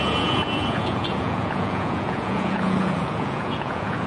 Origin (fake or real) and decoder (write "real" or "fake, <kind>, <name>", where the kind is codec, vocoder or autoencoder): fake, vocoder, Vocos